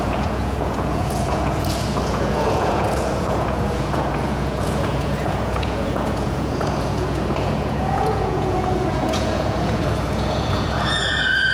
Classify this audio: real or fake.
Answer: fake